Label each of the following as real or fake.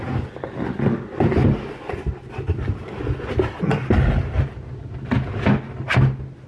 real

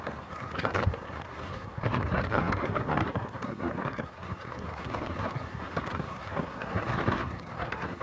fake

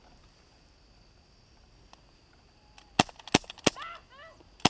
real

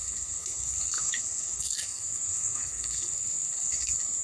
fake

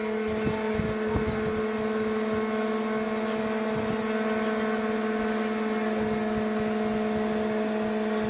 real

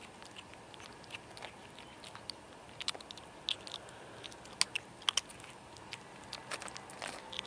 real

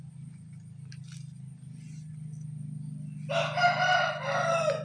real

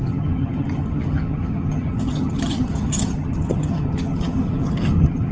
fake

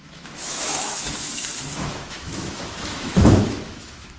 fake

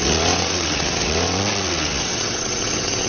fake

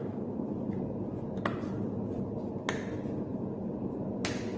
real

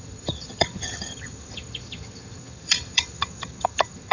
fake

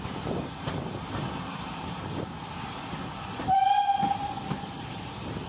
real